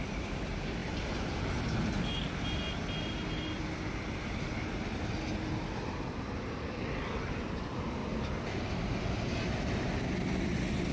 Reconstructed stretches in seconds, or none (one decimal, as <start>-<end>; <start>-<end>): none